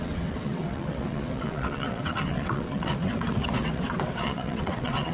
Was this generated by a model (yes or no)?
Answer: yes